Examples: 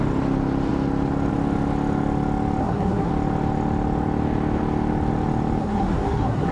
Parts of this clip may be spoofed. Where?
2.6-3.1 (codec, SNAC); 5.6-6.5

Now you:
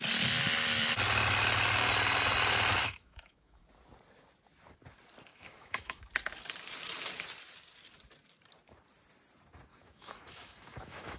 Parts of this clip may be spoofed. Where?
2.8-3.6 (autoencoder, DAC-VAE); 5.3-6.0; 9.7-11.2